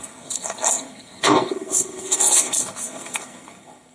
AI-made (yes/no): yes